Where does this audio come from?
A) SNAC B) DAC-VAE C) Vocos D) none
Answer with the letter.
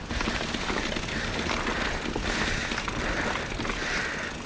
D